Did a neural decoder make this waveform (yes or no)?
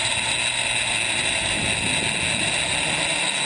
no